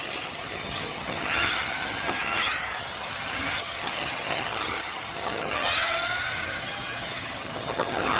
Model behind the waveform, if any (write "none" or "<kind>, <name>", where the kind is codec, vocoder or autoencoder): vocoder, HiFi-GAN